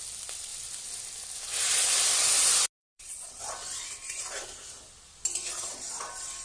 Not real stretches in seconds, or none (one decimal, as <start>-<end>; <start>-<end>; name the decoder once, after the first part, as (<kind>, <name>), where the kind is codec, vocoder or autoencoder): 2.8-3.4 (vocoder, Vocos)